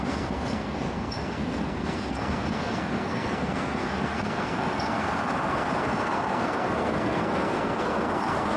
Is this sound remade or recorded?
remade